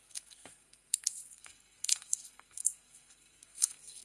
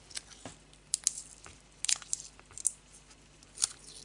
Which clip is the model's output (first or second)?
first